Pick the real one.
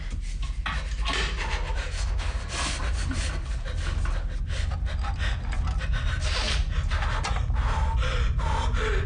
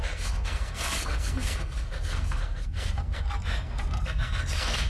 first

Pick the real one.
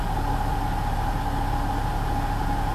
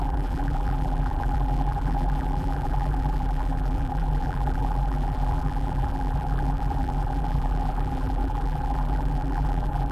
first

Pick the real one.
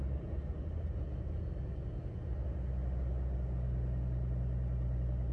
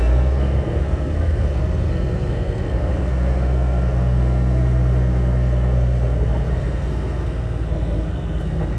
first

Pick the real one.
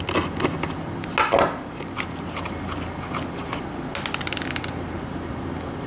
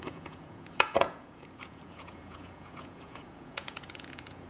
first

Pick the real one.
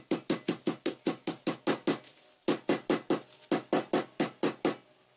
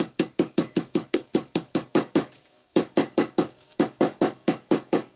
first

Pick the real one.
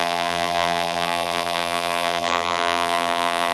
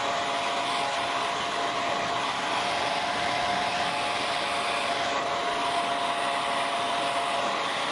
second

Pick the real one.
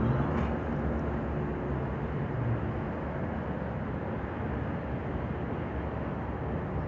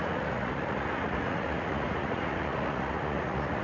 first